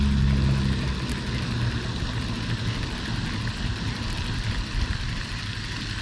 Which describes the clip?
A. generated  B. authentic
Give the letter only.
B